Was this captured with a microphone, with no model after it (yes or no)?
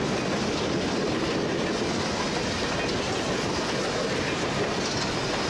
yes